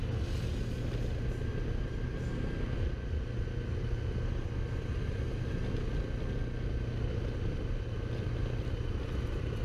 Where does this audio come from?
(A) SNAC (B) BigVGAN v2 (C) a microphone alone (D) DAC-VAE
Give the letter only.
C